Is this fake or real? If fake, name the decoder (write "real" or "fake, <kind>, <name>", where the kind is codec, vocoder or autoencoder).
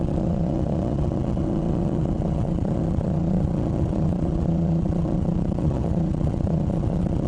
fake, vocoder, Vocos